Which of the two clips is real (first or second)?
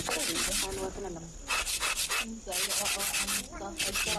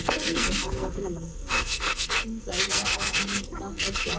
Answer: first